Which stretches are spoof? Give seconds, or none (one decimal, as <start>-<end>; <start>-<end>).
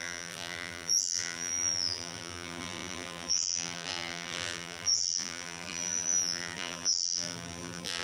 0.0-8.0